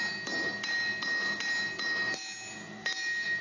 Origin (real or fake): real